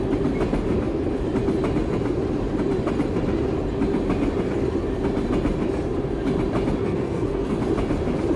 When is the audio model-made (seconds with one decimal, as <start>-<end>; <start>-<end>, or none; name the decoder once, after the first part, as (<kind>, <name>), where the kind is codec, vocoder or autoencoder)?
6.8-7.6 (codec, SNAC)